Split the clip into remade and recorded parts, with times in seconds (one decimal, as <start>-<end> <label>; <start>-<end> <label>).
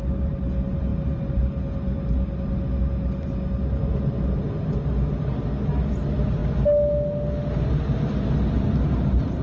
0.0-9.4 recorded